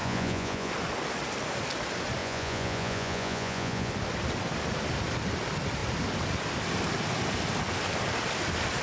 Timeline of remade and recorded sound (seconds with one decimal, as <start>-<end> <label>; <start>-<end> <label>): 0.0-0.7 remade; 0.7-2.2 recorded; 2.2-3.9 remade; 3.9-8.8 recorded